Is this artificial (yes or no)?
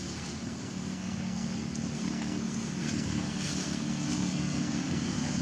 yes